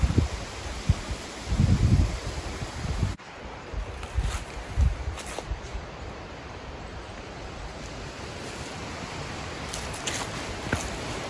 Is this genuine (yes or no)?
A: yes